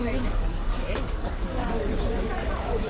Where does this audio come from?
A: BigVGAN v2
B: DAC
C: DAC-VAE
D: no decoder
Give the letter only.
B